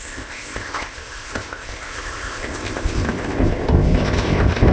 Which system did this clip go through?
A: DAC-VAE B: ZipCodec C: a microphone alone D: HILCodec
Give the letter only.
B